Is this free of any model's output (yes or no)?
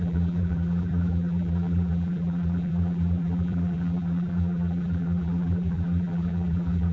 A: no